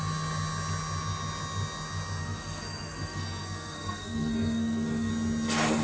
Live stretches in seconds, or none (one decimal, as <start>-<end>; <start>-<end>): 0.0-2.2; 5.1-5.8